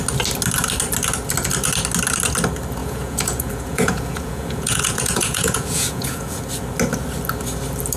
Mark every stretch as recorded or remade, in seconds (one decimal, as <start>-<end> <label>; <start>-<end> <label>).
0.0-2.8 recorded; 2.8-6.4 remade; 6.4-8.0 recorded